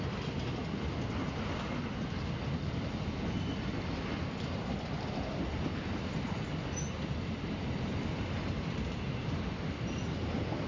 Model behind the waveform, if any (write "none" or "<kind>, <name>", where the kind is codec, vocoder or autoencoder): none